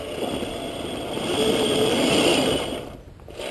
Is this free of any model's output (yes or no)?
yes